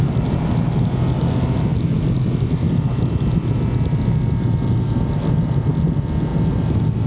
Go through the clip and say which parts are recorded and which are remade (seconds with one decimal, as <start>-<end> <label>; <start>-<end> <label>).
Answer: 0.0-7.1 recorded